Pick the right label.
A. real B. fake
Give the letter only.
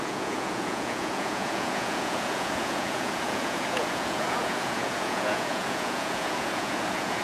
B